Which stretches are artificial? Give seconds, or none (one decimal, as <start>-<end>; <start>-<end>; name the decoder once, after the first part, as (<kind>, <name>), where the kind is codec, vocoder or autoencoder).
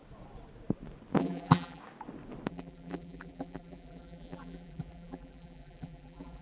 1.2-1.8 (vocoder, BigVGAN v2); 2.5-6.4